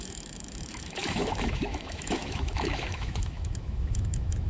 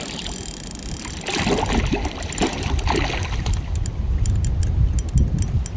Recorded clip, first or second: second